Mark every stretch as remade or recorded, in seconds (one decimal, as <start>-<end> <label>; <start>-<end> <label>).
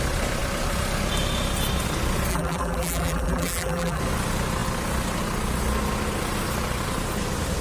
0.0-2.3 recorded; 2.3-4.0 remade; 4.0-7.6 recorded